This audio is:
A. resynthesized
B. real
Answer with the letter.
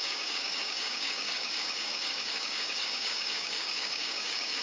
A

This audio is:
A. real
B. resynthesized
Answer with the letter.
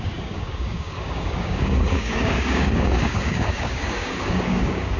B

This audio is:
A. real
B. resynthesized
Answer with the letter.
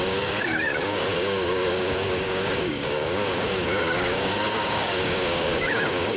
B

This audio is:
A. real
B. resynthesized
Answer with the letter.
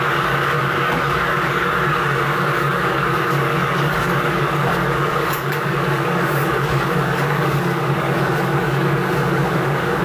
B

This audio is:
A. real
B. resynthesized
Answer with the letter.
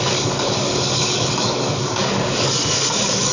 B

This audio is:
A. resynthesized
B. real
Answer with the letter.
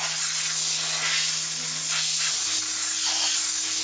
B